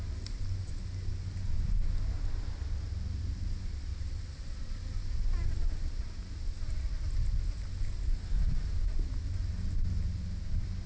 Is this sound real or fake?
real